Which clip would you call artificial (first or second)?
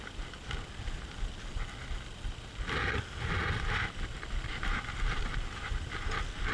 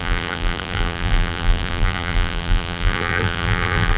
second